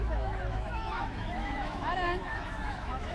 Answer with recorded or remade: remade